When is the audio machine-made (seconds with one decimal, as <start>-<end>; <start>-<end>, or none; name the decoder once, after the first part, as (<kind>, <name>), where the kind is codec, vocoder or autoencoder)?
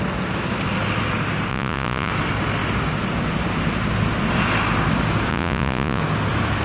1.5-2.1 (vocoder, Vocos); 5.3-6.0